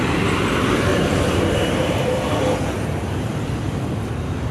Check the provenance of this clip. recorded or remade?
remade